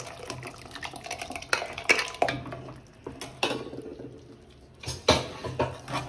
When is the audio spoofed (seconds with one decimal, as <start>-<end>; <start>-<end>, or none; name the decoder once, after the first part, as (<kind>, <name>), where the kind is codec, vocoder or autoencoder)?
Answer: none